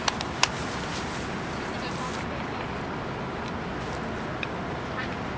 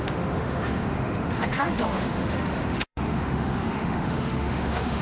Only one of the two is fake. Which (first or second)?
second